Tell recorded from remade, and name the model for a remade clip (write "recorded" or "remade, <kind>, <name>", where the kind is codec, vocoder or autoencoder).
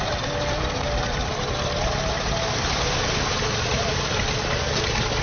recorded